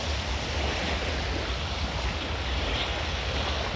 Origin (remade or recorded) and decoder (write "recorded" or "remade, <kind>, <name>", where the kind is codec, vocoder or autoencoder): recorded